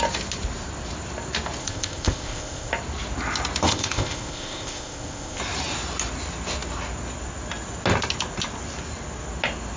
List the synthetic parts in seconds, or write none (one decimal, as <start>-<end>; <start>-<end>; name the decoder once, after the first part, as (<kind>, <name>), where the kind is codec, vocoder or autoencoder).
1.6-2.7 (codec, ZipCodec); 3.6-5.4